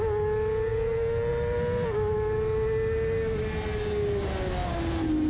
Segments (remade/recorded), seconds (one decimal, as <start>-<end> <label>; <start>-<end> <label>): 0.0-5.3 recorded